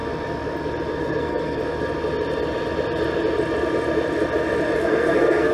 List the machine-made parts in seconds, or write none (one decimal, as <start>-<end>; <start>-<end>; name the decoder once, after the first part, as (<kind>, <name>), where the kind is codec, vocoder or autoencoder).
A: 1.0-1.6 (codec, SNAC); 4.8-5.5